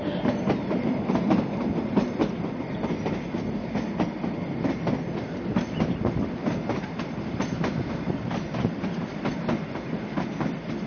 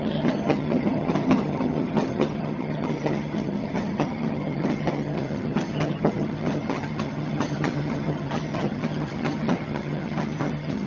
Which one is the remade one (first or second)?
second